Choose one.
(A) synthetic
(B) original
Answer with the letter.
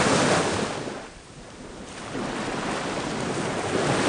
B